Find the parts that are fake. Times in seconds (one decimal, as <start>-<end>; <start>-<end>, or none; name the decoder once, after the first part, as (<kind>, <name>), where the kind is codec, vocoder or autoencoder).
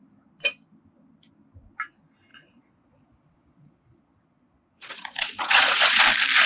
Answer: 2.3-6.0 (vocoder, Vocos)